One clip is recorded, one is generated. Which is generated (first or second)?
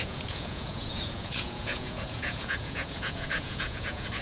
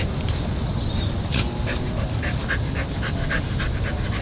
first